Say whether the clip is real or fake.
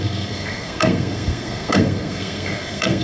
fake